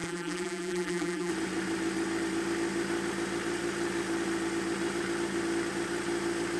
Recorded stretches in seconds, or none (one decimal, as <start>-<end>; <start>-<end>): 1.3-6.6